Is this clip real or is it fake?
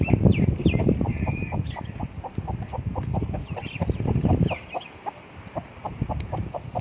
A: fake